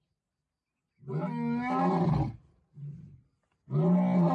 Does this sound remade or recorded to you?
recorded